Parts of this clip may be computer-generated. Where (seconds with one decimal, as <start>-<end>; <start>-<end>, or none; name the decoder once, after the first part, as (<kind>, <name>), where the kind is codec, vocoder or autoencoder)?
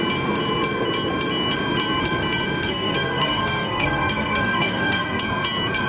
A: 2.7-5.2 (codec, SNAC)